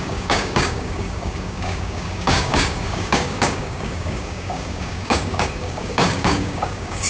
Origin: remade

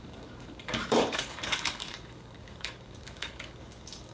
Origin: remade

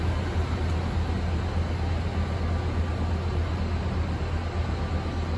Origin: recorded